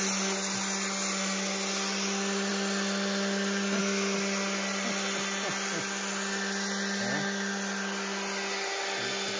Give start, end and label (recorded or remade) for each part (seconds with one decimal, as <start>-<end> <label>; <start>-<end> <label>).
0.0-9.4 recorded